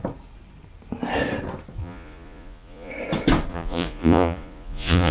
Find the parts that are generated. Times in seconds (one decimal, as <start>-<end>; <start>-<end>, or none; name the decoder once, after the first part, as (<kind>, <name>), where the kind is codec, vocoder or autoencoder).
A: 1.8-2.9 (vocoder, Vocos); 3.5-5.1